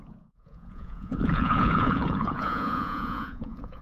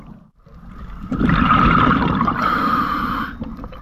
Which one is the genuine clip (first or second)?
second